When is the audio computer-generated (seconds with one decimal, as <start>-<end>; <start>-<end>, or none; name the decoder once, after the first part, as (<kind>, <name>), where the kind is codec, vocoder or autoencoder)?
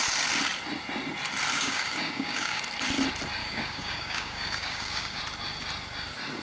1.5-2.6 (codec, DAC); 3.4-5.2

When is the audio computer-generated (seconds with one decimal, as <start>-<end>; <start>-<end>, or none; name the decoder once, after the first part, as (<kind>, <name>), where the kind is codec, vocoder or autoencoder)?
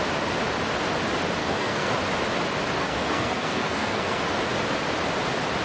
1.4-1.9 (codec, SNAC); 2.8-4.2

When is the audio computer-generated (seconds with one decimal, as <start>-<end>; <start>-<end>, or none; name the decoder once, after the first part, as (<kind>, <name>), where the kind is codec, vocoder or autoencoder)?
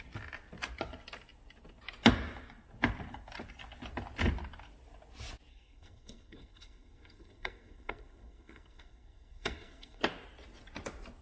5.5-10.0 (codec, SNAC)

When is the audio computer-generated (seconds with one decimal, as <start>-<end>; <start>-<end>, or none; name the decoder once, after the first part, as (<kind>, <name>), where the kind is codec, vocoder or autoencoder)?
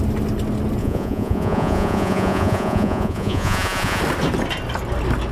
0.8-4.0 (vocoder, Vocos)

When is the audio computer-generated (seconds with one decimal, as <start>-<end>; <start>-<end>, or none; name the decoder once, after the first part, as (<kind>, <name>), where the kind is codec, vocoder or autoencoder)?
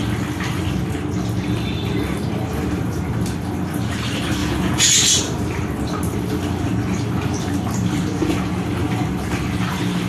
4.4-4.9 (vocoder, Vocos); 8.0-8.5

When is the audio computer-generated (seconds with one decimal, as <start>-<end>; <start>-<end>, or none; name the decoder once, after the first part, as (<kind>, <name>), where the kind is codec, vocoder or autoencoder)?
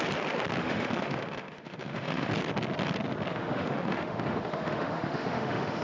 0.6-2.3 (autoencoder, DAC-VAE); 3.3-5.8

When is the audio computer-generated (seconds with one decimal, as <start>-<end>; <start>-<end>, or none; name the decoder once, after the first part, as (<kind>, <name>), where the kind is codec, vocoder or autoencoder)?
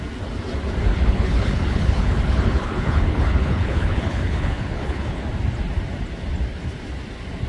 0.9-5.2 (codec, HILCodec)